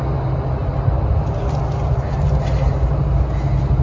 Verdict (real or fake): real